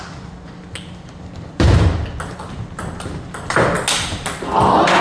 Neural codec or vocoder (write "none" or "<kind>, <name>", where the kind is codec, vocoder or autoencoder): none